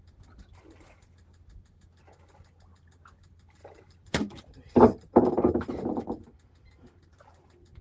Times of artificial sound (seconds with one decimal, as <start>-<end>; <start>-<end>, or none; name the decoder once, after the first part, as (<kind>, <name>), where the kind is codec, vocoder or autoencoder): 3.6-6.2 (vocoder, BigVGAN v2)